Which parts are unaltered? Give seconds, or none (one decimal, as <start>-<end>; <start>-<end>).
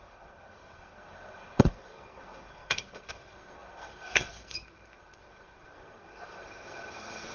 none